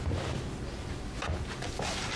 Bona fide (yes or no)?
yes